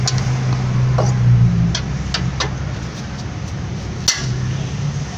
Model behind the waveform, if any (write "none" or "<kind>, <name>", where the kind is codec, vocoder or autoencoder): none